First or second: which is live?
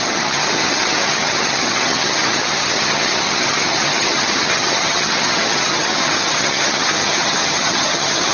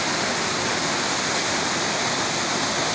second